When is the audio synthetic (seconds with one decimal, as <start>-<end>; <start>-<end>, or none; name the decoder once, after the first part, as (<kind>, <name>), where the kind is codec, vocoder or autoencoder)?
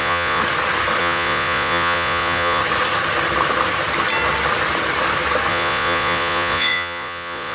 0.0-0.4 (vocoder, Vocos); 1.0-2.6; 5.5-7.5